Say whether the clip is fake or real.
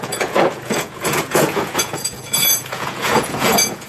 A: fake